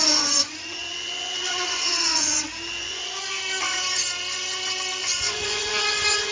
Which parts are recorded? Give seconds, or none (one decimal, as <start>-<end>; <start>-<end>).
2.4-2.8; 3.3-5.0